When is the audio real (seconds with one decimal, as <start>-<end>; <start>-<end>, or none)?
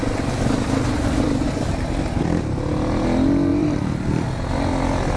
1.7-3.5; 4.5-5.2